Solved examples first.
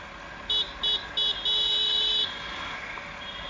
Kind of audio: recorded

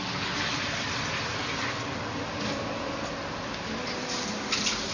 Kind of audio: recorded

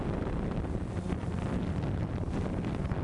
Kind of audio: recorded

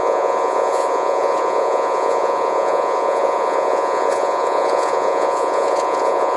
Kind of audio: remade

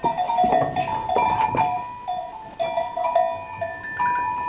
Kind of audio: recorded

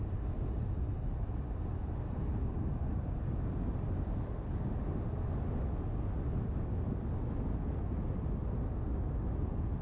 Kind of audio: recorded